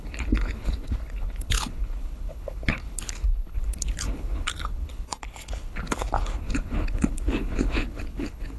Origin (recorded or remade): remade